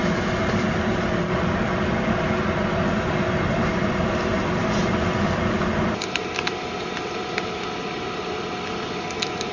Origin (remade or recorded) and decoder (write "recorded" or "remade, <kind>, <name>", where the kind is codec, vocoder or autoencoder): remade, vocoder, BigVGAN v2